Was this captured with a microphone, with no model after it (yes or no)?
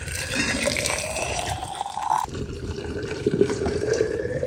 no